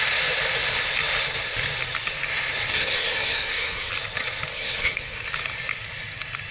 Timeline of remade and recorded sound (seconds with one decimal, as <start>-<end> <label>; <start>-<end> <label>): 0.0-2.7 recorded; 2.7-3.9 remade; 3.9-4.5 recorded; 4.5-5.3 remade; 5.3-6.5 recorded